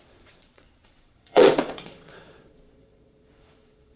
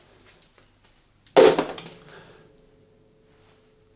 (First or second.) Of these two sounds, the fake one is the first